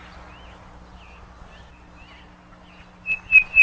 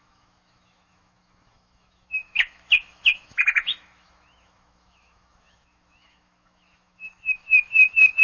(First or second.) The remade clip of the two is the second